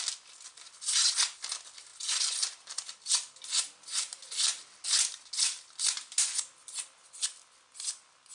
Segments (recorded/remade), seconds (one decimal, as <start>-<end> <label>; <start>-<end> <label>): 0.0-1.9 recorded; 1.9-3.1 remade; 3.1-8.3 recorded